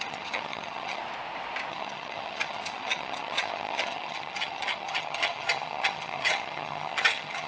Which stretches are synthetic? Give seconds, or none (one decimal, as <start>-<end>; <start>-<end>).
0.0-1.0; 1.7-7.5